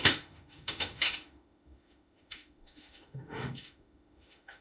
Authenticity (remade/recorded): remade